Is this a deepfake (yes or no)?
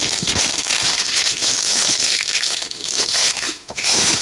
yes